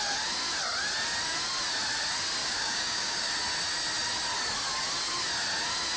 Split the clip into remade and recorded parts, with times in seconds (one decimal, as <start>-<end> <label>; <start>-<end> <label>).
0.0-2.4 recorded; 2.4-3.3 remade; 3.3-6.0 recorded